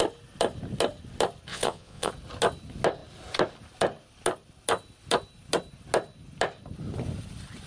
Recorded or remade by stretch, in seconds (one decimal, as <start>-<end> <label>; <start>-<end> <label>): 0.0-1.5 recorded; 1.5-2.1 remade; 2.1-7.7 recorded